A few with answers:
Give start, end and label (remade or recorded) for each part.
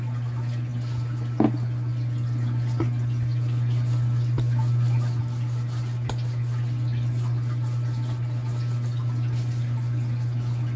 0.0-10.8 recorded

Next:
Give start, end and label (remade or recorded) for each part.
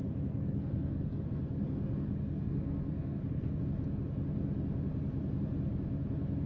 0.0-3.6 remade; 3.6-6.5 recorded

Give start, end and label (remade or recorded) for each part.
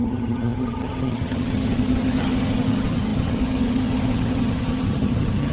0.0-5.5 remade